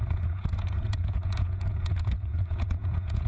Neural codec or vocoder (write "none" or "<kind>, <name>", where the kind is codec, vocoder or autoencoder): vocoder, Vocos